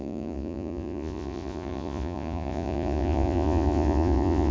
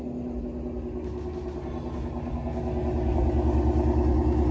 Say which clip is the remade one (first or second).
first